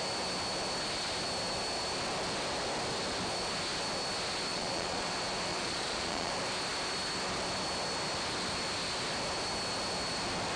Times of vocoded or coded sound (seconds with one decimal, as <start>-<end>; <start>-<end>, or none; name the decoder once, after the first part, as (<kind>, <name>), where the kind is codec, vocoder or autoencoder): 4.5-5.1 (vocoder, Vocos); 5.5-6.3